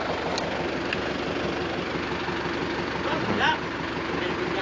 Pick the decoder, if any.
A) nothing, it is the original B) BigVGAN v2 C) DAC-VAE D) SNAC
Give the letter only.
A